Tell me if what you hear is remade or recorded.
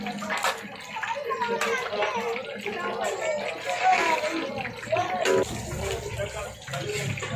recorded